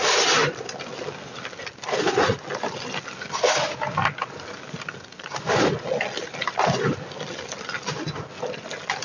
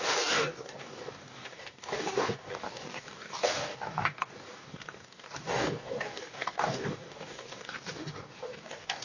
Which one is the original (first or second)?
first